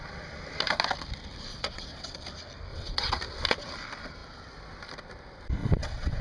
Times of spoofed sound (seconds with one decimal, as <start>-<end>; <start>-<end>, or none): 1.5-2.2; 2.7-3.2; 5.6-6.2